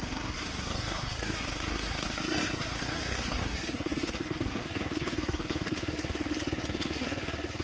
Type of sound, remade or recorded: remade